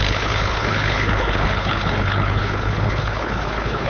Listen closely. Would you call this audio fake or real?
fake